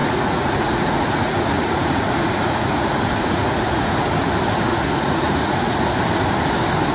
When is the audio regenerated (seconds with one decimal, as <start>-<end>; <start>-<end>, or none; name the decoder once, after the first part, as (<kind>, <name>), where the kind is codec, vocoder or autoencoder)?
0.0-4.1 (vocoder, Vocos); 4.7-5.9